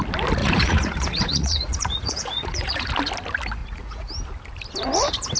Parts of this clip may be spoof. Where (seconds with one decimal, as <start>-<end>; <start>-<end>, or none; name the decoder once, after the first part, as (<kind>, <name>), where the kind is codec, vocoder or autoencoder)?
0.4-2.9 (vocoder, Vocos); 3.6-4.1